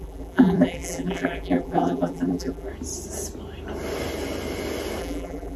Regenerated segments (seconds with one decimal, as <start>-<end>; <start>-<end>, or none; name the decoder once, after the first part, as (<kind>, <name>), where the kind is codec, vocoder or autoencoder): 0.0-2.7 (vocoder, BigVGAN v2); 5.0-5.6